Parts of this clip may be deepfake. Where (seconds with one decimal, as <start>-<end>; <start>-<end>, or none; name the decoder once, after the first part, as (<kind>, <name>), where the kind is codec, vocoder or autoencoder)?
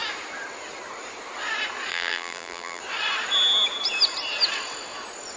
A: 1.9-2.8 (vocoder, BigVGAN v2)